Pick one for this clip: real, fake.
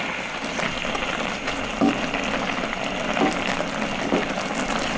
real